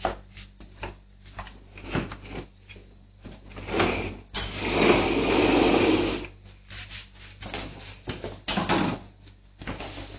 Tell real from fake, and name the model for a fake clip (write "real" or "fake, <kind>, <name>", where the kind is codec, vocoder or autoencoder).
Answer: real